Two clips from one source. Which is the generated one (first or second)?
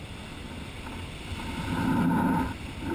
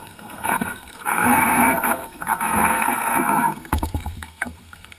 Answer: second